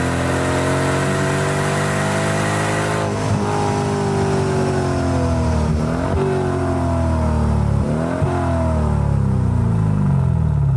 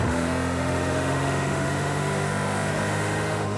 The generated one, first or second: second